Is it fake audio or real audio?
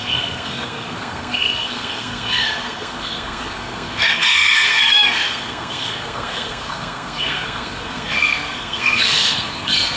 fake